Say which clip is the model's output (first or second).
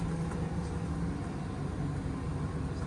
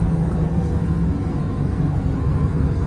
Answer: second